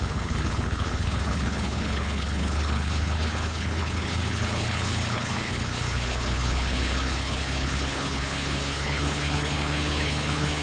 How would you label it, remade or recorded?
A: remade